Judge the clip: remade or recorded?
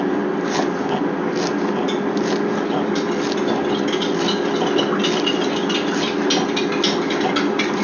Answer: recorded